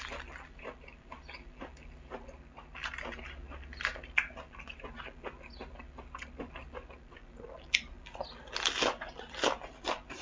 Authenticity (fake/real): real